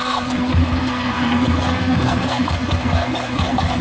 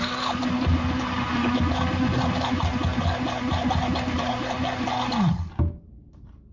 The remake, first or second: first